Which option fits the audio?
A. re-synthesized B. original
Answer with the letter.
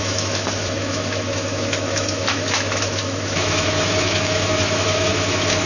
A